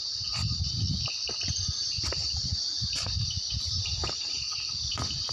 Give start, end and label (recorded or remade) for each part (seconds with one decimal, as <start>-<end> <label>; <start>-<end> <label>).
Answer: 0.0-1.8 recorded; 1.8-3.9 remade; 3.9-5.3 recorded